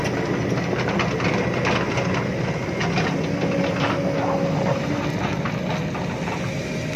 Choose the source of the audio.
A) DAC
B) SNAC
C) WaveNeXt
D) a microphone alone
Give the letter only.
D